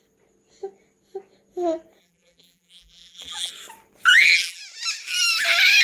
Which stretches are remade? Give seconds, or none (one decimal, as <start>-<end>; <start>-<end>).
2.0-3.5; 4.1-4.6